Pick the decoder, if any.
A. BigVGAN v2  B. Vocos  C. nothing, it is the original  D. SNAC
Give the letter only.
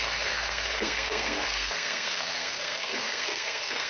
D